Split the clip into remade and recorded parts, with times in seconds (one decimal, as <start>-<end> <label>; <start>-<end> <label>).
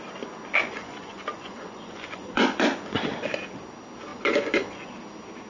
0.0-0.6 recorded; 0.6-3.0 remade; 3.0-4.1 recorded; 4.1-4.9 remade; 4.9-5.5 recorded